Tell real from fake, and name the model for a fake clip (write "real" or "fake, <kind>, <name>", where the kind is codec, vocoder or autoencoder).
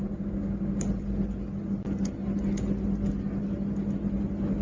real